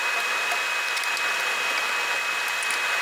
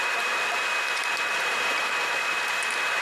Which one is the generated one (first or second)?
second